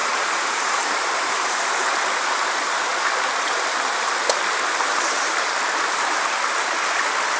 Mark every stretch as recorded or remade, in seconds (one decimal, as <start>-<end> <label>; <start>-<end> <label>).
0.0-1.5 remade; 1.5-7.4 recorded